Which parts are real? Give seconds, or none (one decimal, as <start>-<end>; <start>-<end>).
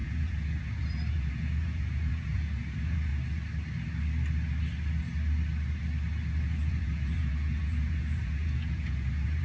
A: 3.1-6.4